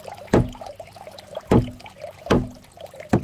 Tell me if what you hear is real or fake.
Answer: real